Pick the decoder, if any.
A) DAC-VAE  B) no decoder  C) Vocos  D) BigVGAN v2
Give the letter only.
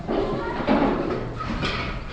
D